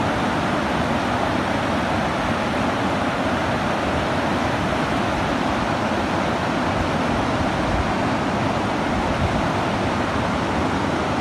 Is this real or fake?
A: real